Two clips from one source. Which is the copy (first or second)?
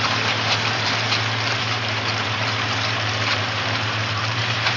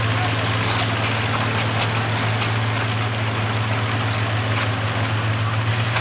first